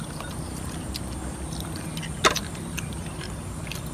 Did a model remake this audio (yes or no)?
no